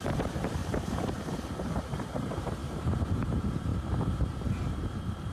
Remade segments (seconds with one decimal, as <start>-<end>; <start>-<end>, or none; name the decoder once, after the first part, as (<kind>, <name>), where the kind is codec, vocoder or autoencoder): 0.0-5.3 (vocoder, BigVGAN v2)